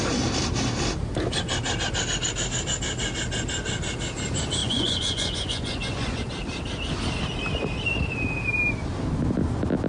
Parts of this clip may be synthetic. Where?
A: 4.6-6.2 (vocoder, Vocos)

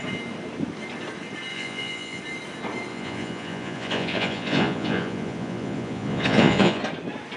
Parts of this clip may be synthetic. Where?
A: 1.5-2.2 (vocoder, Vocos); 2.9-6.8

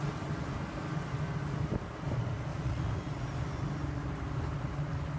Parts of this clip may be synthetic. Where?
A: 2.5-3.1 (vocoder, Vocos)

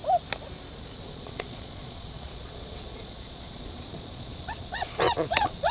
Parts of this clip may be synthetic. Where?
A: 1.0-5.7 (vocoder, Vocos)